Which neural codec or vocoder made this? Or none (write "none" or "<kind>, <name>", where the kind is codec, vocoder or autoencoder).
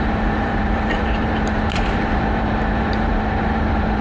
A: vocoder, BigVGAN v2